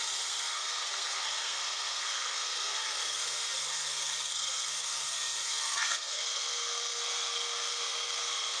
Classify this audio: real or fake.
fake